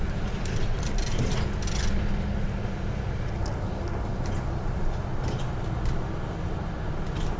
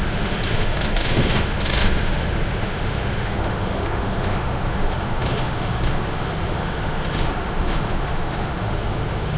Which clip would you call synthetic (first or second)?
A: second